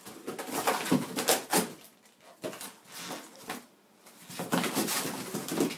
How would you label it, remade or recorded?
recorded